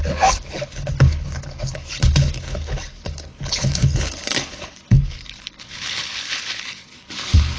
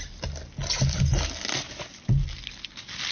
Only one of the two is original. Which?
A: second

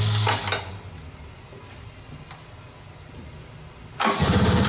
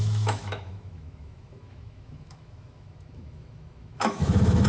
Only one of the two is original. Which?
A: first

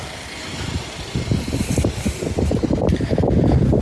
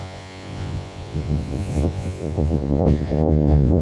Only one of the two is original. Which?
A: first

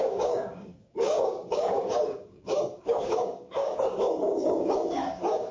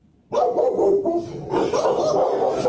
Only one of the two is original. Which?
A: second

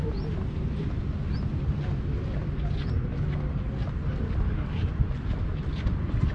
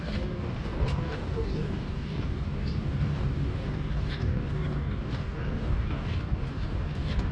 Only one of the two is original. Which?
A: first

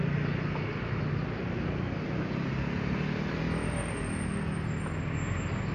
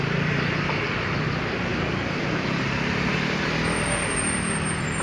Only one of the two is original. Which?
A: first